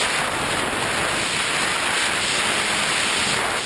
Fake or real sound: real